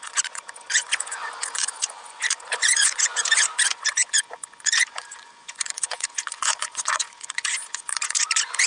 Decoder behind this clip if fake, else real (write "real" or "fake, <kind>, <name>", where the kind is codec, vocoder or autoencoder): fake, vocoder, Vocos